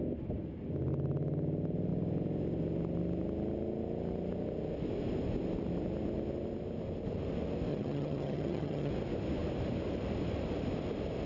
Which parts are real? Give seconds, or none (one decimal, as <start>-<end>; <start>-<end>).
0.0-7.7; 8.9-11.3